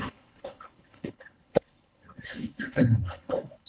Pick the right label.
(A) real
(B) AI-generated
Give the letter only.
B